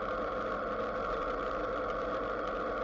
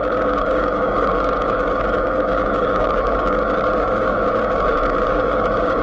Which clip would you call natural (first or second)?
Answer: first